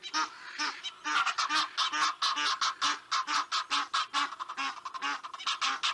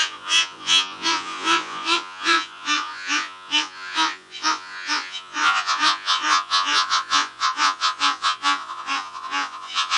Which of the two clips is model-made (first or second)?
second